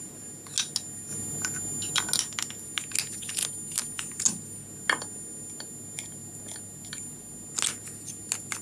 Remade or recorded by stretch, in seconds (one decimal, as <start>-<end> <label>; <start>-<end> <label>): 0.0-8.6 recorded